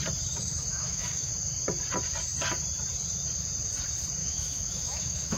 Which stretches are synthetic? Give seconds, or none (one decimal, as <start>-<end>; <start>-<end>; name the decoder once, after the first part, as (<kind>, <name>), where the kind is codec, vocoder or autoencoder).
0.7-1.3 (autoencoder, DAC-VAE); 4.2-5.4